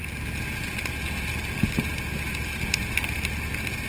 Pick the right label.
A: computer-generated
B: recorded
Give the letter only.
B